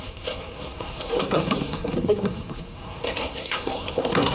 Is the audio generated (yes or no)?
yes